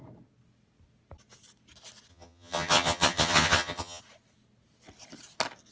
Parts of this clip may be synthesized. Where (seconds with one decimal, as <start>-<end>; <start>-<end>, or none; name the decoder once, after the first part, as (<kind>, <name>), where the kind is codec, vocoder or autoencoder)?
2.1-4.0 (vocoder, HiFi-GAN)